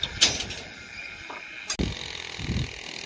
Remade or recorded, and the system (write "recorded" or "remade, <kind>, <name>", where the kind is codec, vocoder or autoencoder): recorded